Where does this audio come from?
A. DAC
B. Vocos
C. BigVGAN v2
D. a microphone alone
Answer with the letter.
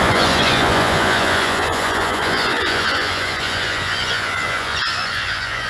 B